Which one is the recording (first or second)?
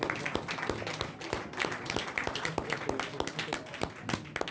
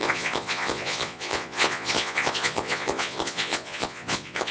first